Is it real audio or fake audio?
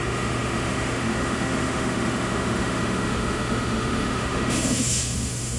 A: fake